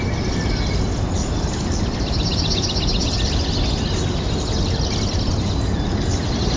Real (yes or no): yes